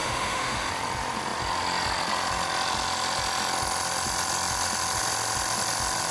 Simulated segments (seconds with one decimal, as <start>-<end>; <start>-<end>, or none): 0.0-0.7